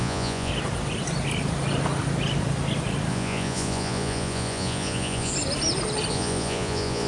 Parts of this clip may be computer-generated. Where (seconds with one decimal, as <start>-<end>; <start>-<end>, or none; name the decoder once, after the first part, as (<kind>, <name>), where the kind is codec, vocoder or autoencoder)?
0.0-0.5 (vocoder, Vocos); 3.1-5.3; 6.1-7.1